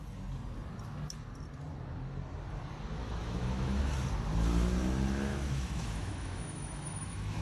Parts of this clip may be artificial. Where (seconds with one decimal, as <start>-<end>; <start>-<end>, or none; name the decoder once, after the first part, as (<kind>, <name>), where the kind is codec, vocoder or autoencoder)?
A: 3.0-3.8 (autoencoder, DAC-VAE); 5.3-7.4